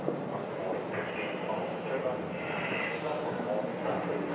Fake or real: real